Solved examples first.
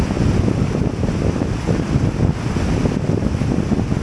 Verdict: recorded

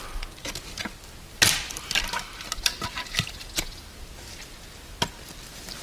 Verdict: recorded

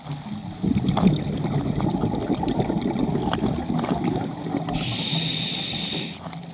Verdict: recorded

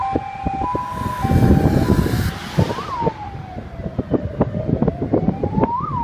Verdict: recorded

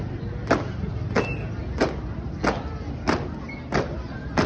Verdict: recorded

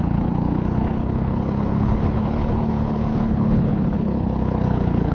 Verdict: remade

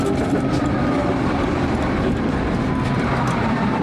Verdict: recorded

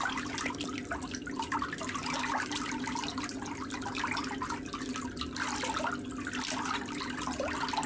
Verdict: recorded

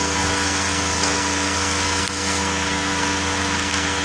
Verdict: remade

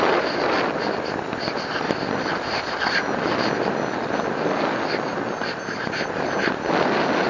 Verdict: recorded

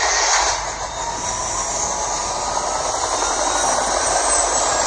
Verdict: recorded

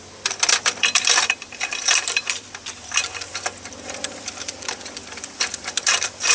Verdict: remade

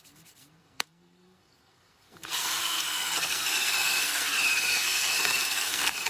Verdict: remade